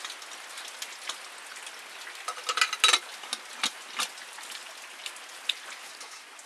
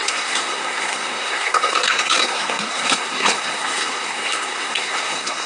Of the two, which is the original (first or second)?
first